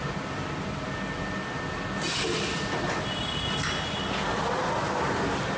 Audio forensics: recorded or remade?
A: recorded